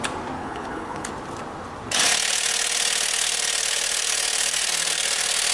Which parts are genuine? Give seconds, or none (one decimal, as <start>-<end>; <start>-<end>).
0.0-0.4; 1.1-5.5